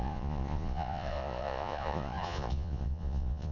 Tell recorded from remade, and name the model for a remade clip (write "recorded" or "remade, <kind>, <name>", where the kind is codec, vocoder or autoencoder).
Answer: remade, vocoder, Vocos